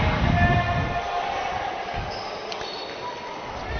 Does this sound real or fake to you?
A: real